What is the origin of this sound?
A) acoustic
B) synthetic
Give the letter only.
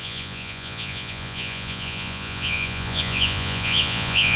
B